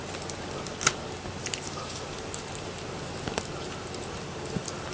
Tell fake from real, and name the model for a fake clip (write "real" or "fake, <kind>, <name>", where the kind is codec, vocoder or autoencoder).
real